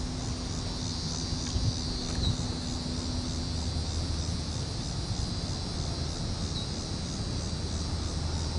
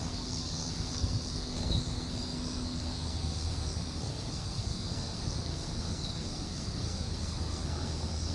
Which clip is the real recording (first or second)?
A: first